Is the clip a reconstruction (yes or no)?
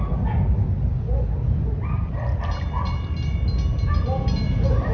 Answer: no